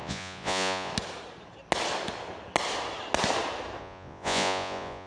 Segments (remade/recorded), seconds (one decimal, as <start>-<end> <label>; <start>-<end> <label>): 0.0-0.9 remade; 0.9-3.8 recorded; 3.8-5.1 remade

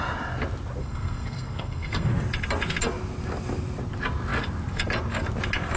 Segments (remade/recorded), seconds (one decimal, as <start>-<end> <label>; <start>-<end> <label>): 0.0-0.8 recorded; 0.8-2.1 remade; 2.1-5.8 recorded

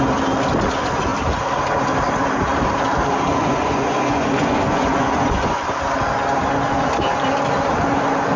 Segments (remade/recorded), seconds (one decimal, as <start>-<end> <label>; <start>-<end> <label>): 0.0-3.3 recorded; 3.3-5.7 remade; 5.7-8.4 recorded